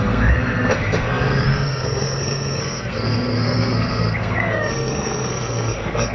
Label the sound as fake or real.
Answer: fake